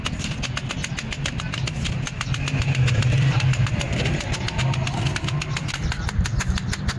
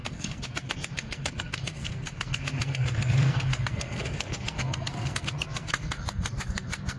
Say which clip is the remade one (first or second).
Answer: second